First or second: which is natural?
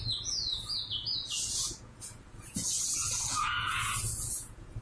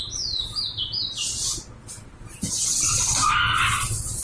second